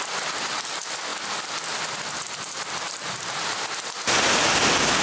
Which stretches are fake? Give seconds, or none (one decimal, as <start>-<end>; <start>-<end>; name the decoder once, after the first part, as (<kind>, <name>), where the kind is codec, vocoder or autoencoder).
none